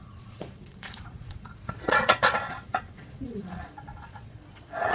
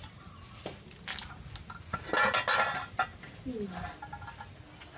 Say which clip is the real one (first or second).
second